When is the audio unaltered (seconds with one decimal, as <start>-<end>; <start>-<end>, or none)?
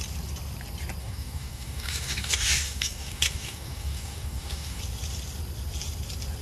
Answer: 0.0-1.0; 4.8-6.4